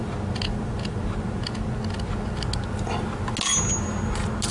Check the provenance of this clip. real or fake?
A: real